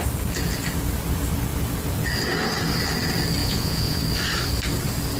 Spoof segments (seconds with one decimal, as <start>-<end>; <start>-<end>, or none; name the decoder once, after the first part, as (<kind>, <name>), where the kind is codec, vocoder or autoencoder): 3.4-4.0 (vocoder, Vocos)